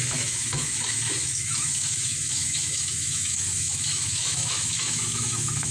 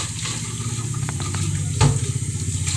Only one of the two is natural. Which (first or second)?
second